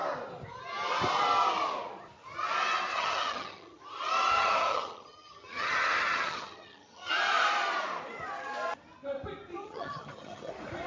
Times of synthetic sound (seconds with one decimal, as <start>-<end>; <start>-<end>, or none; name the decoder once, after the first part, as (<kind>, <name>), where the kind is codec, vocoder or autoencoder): 2.9-3.8 (vocoder, HiFi-GAN); 4.3-7.1; 9.6-10.5